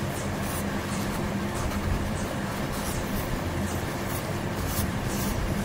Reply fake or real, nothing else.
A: fake